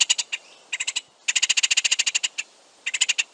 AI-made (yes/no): no